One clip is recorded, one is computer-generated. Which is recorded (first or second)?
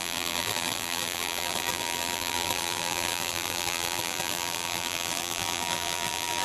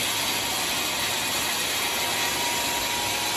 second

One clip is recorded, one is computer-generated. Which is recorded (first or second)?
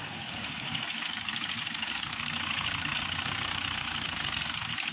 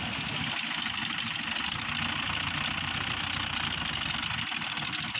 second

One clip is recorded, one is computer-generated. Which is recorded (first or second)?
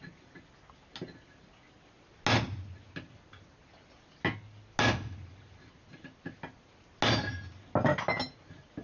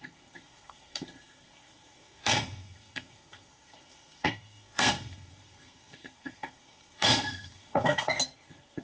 first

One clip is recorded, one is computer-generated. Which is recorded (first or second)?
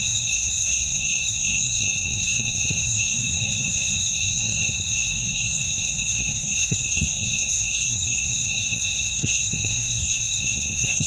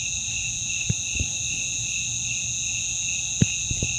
second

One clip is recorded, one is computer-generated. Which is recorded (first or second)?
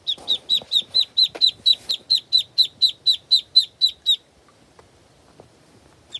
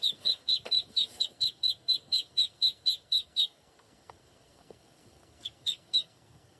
first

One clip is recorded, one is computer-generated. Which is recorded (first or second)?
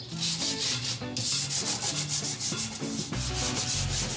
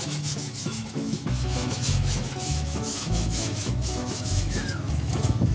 first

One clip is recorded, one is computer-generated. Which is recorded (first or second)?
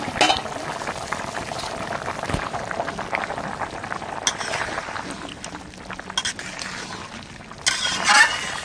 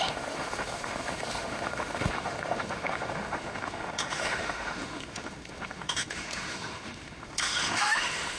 first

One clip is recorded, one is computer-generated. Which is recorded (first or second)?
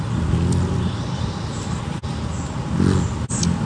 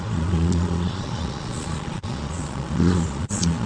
first